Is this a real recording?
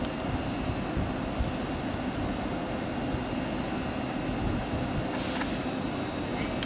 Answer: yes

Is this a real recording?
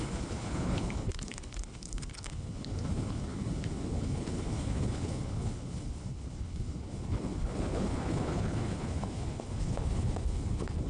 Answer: no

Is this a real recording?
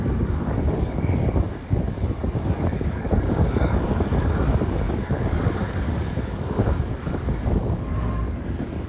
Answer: no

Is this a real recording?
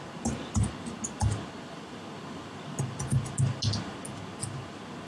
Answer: yes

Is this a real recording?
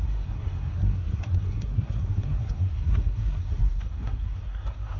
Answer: no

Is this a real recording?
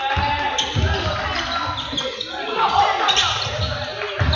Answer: yes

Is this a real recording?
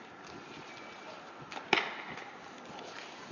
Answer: yes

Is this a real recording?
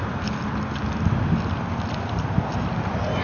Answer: yes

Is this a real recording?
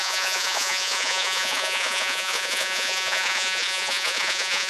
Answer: no